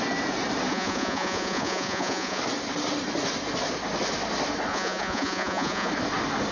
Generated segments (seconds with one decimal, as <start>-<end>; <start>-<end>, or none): 0.7-2.4; 4.7-5.9